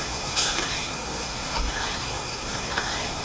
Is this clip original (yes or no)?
no